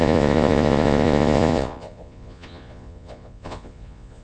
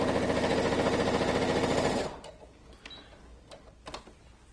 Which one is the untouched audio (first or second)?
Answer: second